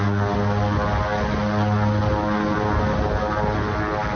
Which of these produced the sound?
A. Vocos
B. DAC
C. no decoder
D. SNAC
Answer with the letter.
C